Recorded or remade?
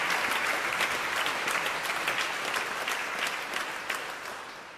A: remade